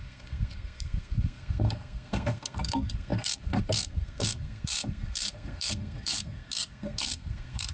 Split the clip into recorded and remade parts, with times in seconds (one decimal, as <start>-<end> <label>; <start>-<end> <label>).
0.0-7.7 remade